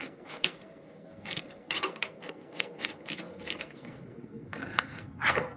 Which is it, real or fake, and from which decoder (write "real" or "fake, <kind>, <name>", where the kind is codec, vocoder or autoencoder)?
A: fake, codec, SNAC